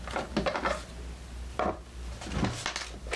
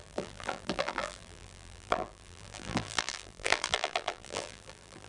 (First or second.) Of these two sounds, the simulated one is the second